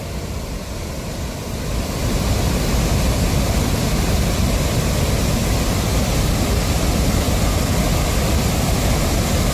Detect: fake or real real